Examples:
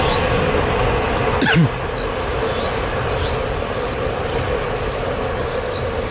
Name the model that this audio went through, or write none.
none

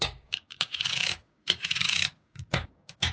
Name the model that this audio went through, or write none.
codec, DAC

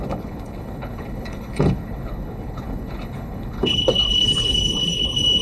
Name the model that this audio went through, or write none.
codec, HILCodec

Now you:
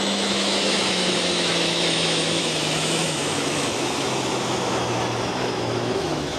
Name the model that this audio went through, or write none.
autoencoder, DAC-VAE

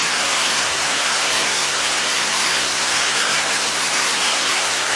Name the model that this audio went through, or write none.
codec, SNAC